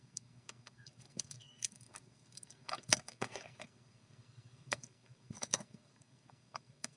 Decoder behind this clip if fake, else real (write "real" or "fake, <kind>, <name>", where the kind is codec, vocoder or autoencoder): fake, codec, SNAC